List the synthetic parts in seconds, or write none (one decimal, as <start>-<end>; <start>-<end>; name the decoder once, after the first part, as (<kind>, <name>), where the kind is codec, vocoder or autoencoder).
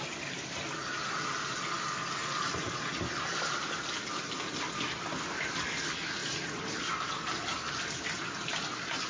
2.2-2.8 (vocoder, BigVGAN v2); 6.2-7.1